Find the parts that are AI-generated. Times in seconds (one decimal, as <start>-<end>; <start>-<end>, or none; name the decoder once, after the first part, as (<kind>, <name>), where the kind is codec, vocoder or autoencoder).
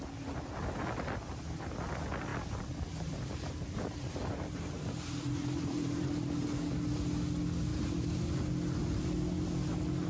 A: 2.3-6.3 (vocoder, BigVGAN v2); 7.7-8.2